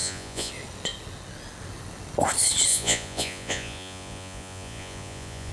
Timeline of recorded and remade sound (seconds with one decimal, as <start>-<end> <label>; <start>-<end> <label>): 0.0-0.5 remade; 0.5-2.7 recorded; 2.7-5.5 remade